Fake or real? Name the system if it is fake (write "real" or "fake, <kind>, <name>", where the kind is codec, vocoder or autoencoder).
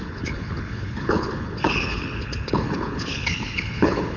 fake, codec, HILCodec